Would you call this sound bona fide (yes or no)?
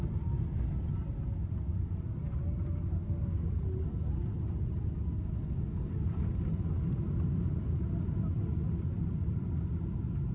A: yes